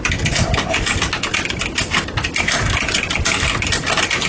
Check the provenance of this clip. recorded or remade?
recorded